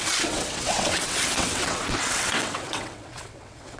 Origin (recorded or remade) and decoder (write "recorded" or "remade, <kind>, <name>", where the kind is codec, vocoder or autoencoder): remade, vocoder, WaveNeXt